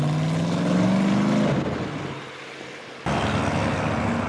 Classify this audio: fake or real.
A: real